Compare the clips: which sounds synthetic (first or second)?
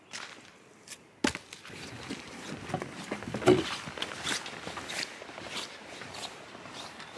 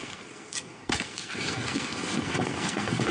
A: second